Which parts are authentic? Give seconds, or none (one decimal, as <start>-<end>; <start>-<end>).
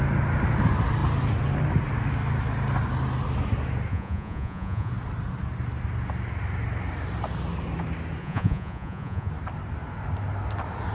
0.0-3.9; 4.9-8.2; 9.3-10.9